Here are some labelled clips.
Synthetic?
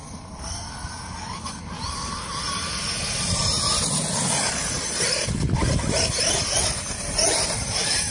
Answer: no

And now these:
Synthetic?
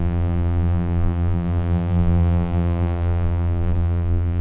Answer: yes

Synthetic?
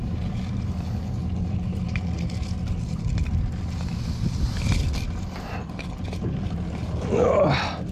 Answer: no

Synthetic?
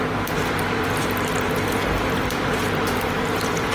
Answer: yes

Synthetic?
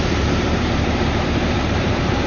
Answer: yes